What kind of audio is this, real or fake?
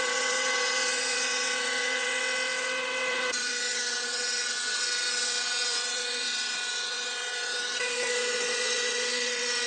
fake